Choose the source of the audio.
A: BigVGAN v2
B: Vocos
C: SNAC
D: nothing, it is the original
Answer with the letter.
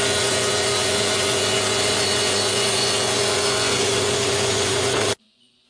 B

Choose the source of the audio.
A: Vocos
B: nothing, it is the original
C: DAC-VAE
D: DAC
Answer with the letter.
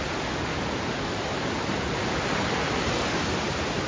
B